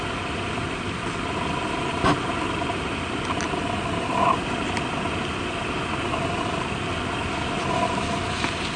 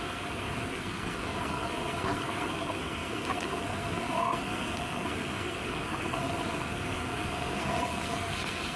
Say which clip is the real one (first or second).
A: first